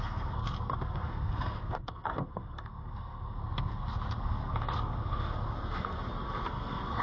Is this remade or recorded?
remade